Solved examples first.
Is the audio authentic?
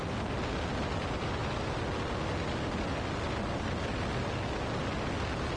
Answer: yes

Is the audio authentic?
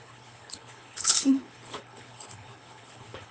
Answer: no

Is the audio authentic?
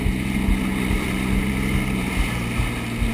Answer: yes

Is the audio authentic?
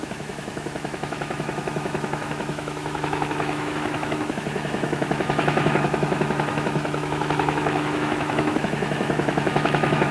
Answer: no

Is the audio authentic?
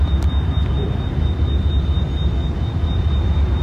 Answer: yes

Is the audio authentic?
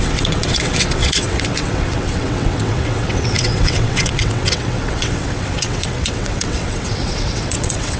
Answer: no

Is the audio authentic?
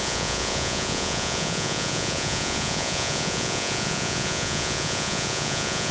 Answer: no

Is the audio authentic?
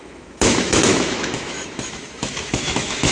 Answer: no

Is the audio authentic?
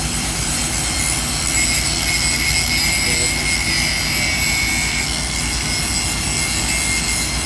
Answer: yes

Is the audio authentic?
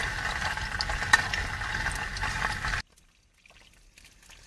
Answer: yes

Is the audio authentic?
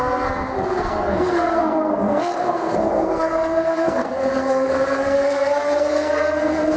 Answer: no